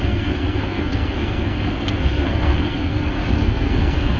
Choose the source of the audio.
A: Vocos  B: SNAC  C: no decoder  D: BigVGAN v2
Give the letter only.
B